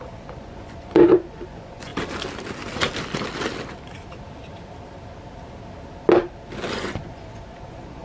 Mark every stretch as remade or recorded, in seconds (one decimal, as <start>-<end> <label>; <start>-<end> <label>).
0.0-1.9 remade; 1.9-6.7 recorded; 6.7-8.0 remade